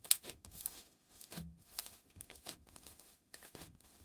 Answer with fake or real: fake